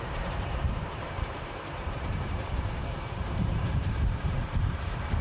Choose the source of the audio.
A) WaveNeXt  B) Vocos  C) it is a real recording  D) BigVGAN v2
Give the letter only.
D